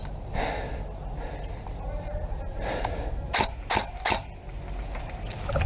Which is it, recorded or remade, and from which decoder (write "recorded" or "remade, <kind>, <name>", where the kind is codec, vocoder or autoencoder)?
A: recorded